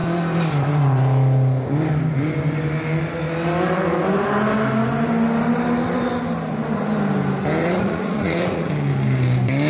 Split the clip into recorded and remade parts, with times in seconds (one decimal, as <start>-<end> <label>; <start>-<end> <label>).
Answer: 0.0-7.6 recorded; 7.6-8.7 remade; 8.7-9.7 recorded